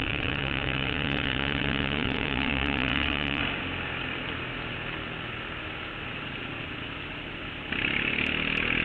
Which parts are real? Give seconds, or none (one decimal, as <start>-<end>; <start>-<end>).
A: 3.4-8.8